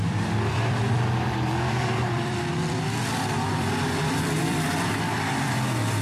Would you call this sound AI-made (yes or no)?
yes